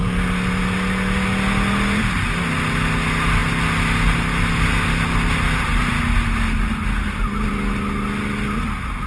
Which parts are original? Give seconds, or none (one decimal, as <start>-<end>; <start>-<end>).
0.0-9.1